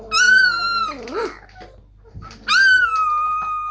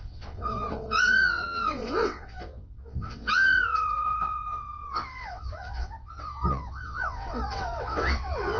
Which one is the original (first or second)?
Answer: first